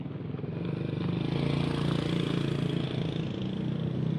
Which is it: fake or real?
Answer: real